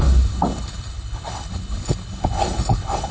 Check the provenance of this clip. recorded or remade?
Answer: remade